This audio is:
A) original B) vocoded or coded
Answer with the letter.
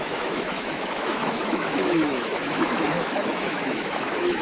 B